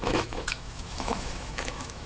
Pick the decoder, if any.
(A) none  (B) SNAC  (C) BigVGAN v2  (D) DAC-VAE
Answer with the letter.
D